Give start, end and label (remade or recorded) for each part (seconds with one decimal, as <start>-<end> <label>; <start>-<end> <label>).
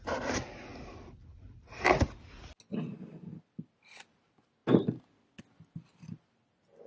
0.0-6.9 recorded